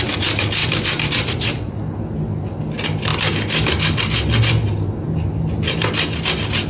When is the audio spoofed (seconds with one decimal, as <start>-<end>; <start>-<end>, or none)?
0.6-2.0